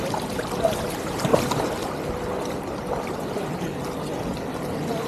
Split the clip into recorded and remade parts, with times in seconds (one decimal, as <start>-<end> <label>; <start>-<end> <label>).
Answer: 0.0-5.1 recorded

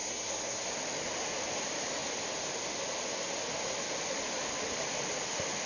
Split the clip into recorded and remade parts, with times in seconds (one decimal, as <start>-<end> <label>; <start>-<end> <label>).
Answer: 0.0-0.7 remade; 0.7-5.7 recorded

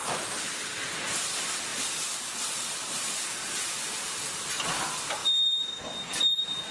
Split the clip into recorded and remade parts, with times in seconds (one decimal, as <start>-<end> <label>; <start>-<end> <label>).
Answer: 0.0-6.7 recorded

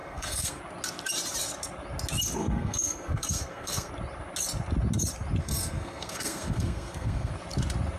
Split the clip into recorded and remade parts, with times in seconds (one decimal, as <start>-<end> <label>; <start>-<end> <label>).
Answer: 0.0-0.6 remade; 0.6-2.4 recorded; 2.4-3.9 remade; 3.9-5.4 recorded; 5.4-7.3 remade; 7.3-8.0 recorded

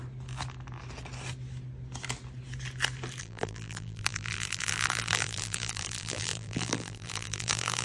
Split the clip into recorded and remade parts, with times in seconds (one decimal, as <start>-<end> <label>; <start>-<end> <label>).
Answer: 0.0-3.2 recorded; 3.2-7.8 remade

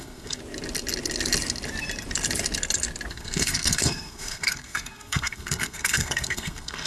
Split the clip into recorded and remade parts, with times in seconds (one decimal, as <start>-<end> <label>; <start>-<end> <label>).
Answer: 0.0-0.4 remade; 0.4-3.1 recorded; 3.1-6.9 remade

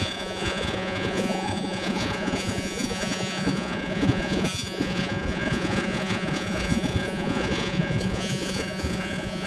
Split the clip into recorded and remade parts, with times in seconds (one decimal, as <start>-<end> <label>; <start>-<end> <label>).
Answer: 0.0-9.5 remade

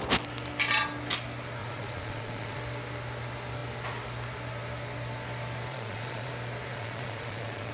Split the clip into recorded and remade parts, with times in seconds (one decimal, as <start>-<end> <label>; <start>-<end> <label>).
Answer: 0.0-1.6 recorded; 1.6-2.6 remade; 2.6-5.7 recorded; 5.7-6.3 remade; 6.3-6.7 recorded; 6.7-7.7 remade